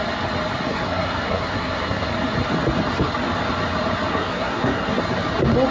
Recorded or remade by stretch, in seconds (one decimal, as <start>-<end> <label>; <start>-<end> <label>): 0.0-0.7 recorded; 0.7-2.1 remade; 2.1-4.1 recorded; 4.1-5.0 remade; 5.0-5.7 recorded